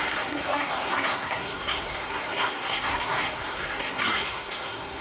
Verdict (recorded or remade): remade